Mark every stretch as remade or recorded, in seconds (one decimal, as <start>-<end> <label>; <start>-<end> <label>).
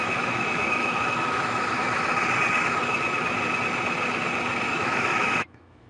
0.0-2.1 remade; 2.1-4.5 recorded; 4.5-5.9 remade